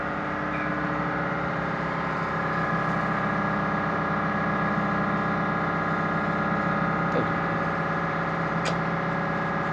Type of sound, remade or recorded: recorded